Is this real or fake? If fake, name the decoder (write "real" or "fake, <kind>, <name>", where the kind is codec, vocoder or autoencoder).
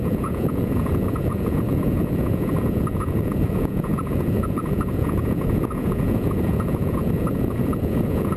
fake, vocoder, Vocos